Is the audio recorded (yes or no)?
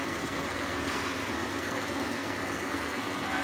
no